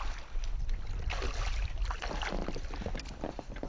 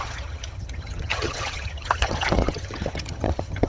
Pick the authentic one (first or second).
first